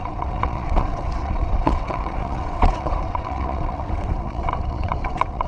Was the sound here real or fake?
fake